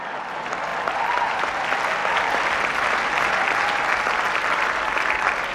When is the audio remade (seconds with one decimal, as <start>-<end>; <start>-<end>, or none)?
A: none